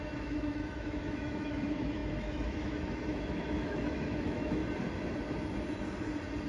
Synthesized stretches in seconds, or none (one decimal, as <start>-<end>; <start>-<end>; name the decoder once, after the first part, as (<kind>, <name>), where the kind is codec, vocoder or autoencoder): 0.0-4.6 (autoencoder, DAC-VAE)